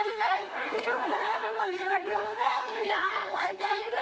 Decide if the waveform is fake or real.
fake